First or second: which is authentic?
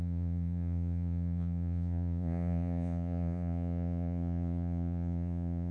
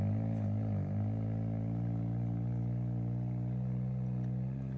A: second